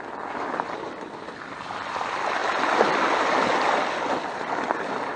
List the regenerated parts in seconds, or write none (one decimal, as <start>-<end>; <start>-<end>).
none

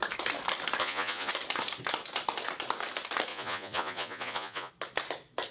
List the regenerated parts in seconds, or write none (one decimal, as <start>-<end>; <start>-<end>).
0.8-1.3; 3.3-4.7

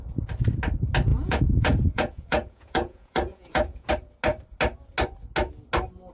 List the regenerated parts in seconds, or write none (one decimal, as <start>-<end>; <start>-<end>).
1.1-3.9

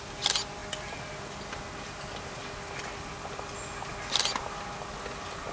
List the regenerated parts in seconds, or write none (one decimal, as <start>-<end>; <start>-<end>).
none

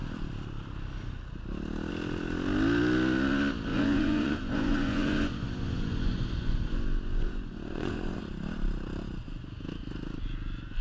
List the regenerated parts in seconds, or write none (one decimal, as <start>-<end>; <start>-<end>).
3.7-8.2

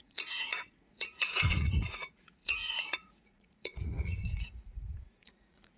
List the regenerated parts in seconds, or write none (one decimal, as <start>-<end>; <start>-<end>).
0.0-5.8

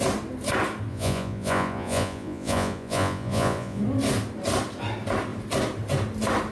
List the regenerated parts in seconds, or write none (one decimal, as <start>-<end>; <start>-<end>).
0.9-3.8